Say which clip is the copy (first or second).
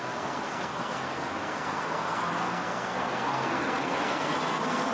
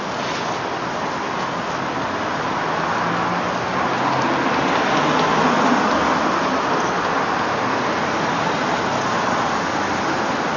first